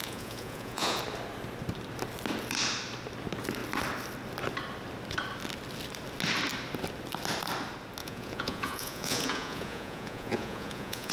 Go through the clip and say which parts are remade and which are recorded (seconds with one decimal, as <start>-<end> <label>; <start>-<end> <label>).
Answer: 0.0-1.0 remade; 1.0-8.0 recorded; 8.0-11.1 remade